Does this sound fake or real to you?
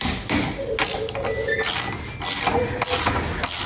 real